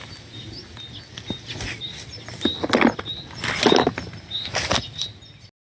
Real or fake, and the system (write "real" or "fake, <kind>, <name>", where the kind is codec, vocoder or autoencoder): real